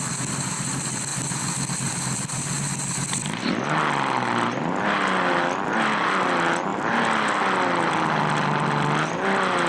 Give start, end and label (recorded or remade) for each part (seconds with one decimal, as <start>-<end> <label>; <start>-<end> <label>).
0.0-9.7 recorded